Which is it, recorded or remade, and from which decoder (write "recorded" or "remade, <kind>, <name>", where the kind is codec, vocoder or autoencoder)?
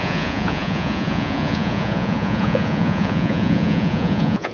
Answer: remade, vocoder, Vocos